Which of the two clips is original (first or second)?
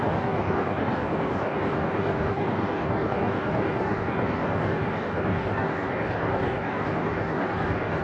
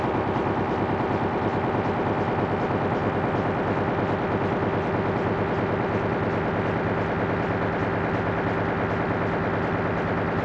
second